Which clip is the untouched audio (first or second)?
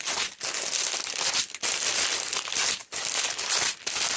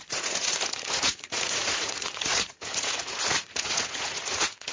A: first